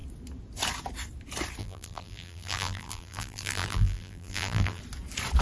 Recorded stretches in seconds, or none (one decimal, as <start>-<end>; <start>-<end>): 0.0-1.6; 4.8-5.4